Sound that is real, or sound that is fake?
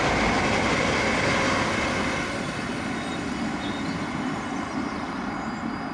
real